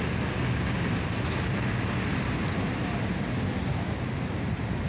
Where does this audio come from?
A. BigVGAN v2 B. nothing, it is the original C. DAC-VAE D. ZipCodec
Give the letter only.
B